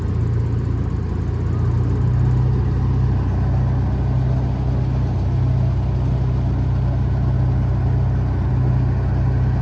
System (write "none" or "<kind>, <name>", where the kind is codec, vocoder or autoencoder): none